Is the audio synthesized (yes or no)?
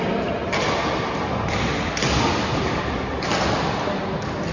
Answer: no